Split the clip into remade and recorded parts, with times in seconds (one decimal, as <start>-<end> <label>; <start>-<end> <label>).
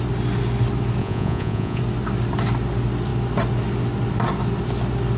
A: 0.0-1.0 recorded; 1.0-1.8 remade; 1.8-5.2 recorded